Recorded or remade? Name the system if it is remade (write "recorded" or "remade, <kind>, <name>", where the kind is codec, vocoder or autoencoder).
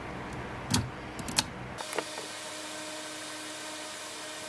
recorded